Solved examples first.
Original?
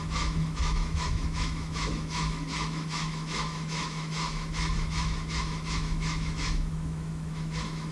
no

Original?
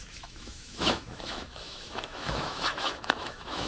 no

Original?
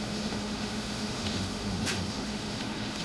no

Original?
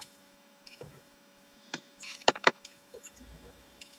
no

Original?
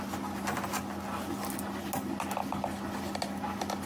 yes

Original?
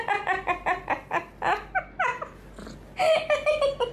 yes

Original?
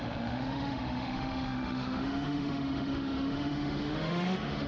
no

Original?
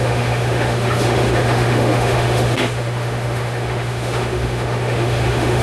no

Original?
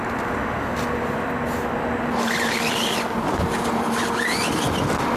yes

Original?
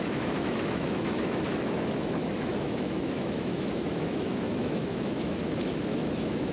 no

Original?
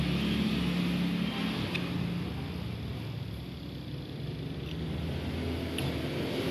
yes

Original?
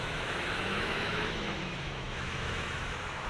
no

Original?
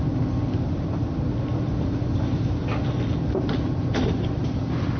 yes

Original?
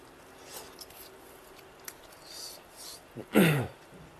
yes